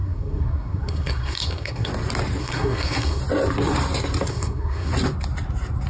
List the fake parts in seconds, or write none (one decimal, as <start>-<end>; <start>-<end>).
0.0-1.9; 2.4-3.2; 4.3-4.9